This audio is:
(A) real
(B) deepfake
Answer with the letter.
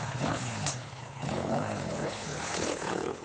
B